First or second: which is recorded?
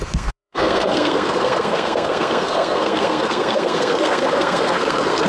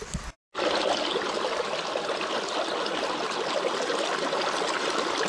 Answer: second